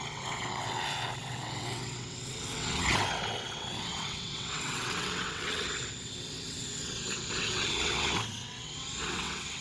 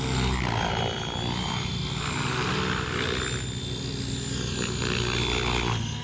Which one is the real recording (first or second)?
second